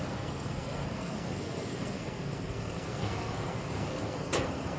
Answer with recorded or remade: remade